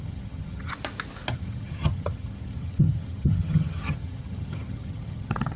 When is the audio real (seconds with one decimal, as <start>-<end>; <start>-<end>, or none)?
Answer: 0.7-1.3